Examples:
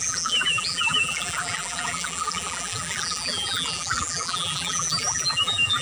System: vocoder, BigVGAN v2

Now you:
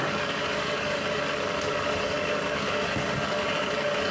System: codec, DAC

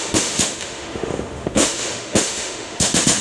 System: autoencoder, DAC-VAE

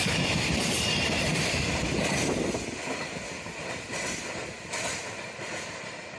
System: none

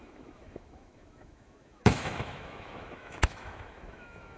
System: autoencoder, DAC-VAE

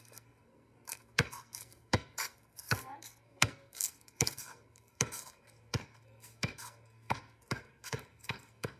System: codec, SNAC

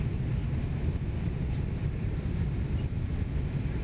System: none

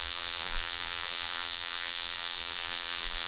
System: vocoder, BigVGAN v2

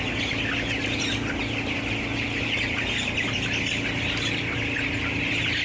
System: none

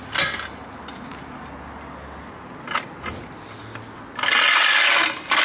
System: none